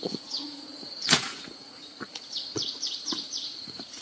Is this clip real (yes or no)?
no